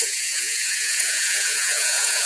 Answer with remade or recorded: remade